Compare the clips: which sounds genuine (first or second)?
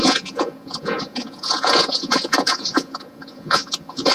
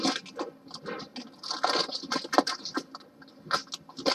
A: second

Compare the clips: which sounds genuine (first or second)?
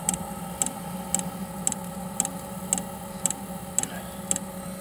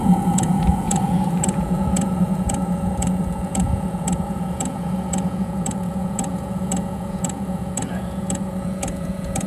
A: first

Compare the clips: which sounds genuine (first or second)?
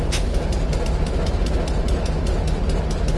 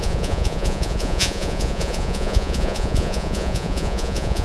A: first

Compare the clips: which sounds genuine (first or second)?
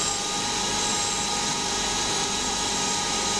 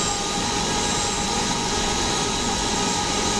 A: first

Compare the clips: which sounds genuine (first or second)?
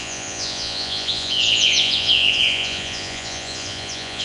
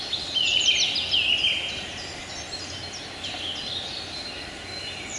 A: second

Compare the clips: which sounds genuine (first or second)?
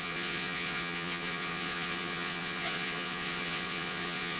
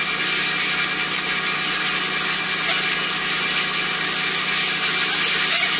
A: second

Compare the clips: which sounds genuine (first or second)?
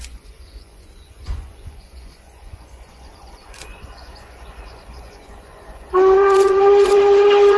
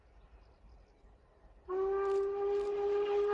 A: second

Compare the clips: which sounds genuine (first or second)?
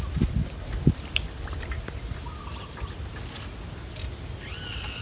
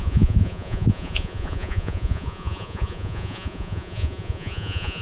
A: first